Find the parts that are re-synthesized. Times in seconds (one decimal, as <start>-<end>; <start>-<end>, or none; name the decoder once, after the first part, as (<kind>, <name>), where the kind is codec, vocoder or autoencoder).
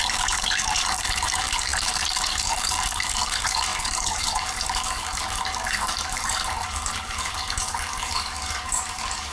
0.0-9.3 (codec, DAC)